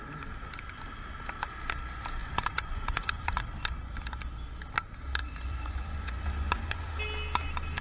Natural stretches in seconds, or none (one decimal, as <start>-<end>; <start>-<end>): 0.0-2.2; 3.3-5.2; 6.9-7.8